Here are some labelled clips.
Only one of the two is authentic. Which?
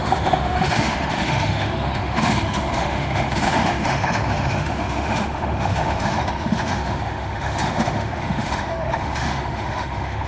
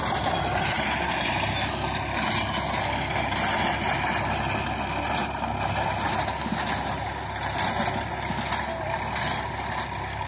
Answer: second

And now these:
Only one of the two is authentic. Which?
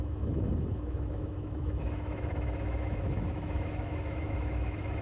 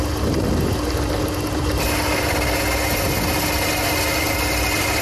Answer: second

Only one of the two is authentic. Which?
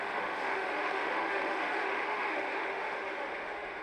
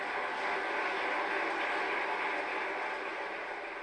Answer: second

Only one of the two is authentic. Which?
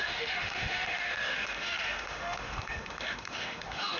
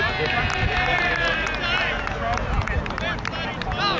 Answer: second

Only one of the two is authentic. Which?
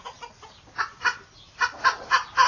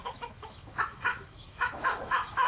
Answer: first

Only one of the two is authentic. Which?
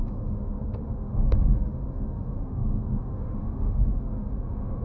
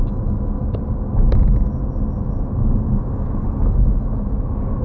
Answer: second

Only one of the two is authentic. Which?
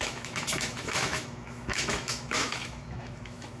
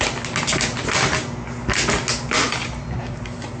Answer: second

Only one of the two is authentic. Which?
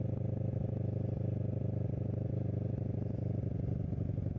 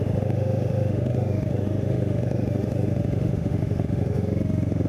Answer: first